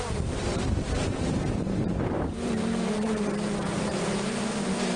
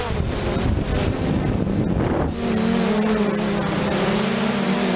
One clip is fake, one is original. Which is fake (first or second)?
first